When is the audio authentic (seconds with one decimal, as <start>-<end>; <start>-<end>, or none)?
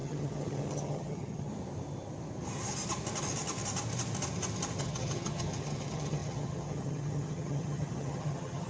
1.5-4.8